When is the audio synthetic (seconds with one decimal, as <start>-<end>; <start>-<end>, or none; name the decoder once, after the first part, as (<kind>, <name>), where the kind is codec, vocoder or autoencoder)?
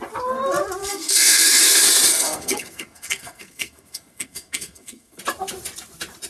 0.8-1.6 (codec, SNAC); 2.1-5.2